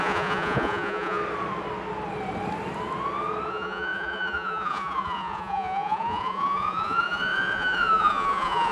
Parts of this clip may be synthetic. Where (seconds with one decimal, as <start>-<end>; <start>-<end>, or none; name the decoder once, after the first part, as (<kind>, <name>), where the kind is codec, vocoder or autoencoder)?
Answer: 0.0-1.2 (vocoder, Vocos); 3.5-8.7